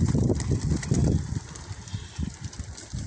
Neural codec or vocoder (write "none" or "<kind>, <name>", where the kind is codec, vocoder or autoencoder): none